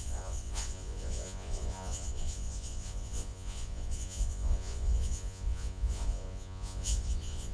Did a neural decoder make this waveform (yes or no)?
yes